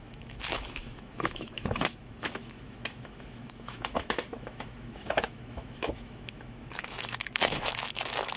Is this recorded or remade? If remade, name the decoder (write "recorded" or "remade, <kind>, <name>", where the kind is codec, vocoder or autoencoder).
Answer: remade, autoencoder, DAC-VAE